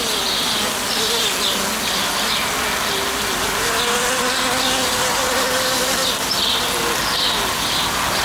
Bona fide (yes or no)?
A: yes